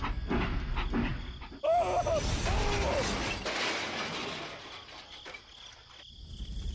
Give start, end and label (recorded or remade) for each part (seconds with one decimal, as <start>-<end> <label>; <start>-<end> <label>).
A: 0.0-6.7 recorded